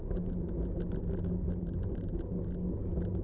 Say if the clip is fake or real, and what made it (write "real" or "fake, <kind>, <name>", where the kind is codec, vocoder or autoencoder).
real